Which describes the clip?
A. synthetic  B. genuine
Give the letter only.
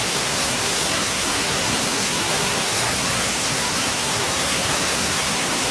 A